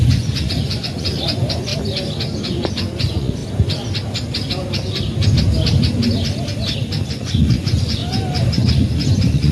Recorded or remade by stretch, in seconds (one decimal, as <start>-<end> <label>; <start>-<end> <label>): 0.0-1.7 remade; 1.7-2.4 recorded; 2.4-3.4 remade; 3.4-7.1 recorded; 7.1-8.0 remade; 8.0-8.5 recorded; 8.5-9.5 remade